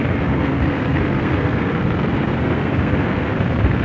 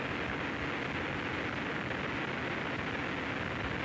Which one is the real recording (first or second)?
second